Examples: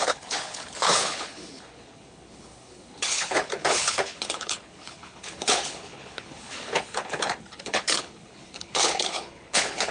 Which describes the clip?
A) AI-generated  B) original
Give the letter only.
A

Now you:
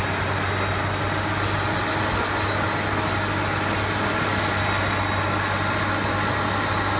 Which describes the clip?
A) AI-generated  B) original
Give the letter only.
B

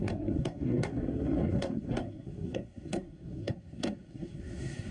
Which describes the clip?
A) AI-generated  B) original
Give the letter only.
A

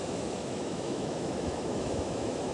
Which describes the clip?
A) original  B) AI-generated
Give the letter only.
B